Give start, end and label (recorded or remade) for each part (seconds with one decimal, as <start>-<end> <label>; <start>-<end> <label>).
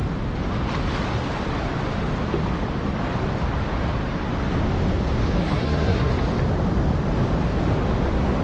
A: 0.0-5.4 recorded; 5.4-6.1 remade; 6.1-8.4 recorded